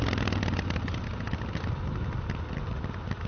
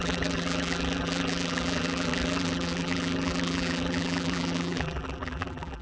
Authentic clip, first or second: first